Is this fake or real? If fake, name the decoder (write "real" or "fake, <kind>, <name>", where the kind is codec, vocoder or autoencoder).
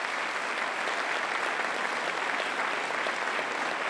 real